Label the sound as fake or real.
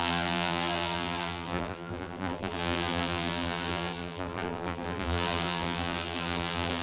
fake